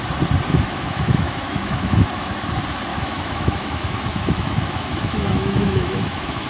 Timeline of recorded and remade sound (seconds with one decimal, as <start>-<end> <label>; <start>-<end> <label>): 0.0-0.5 recorded; 0.5-2.3 remade; 2.3-2.9 recorded; 2.9-6.5 remade